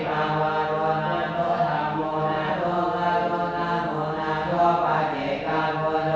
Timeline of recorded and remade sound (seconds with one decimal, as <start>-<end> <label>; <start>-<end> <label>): 0.0-1.8 recorded; 1.8-2.5 remade; 2.5-6.2 recorded